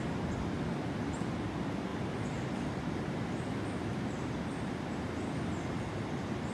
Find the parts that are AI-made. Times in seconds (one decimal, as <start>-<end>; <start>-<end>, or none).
1.9-3.2; 3.9-4.5